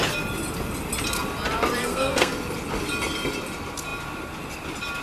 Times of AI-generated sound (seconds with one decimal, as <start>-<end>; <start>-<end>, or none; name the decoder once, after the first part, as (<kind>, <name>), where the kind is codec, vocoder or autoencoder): 1.8-2.3 (codec, SNAC)